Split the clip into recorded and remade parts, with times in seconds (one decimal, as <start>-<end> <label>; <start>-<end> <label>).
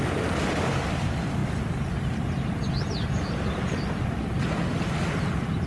0.0-5.7 recorded